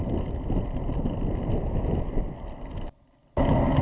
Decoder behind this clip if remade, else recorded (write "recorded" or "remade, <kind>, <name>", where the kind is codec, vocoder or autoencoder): recorded